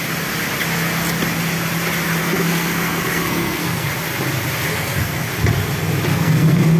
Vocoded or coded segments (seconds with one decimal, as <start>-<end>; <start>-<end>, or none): 2.2-3.9; 4.7-5.3; 6.1-6.8